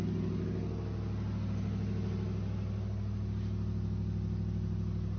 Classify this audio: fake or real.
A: real